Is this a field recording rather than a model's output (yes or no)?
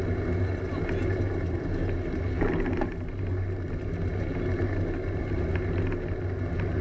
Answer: yes